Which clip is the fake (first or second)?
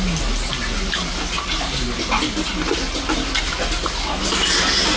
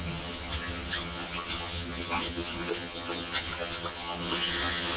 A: second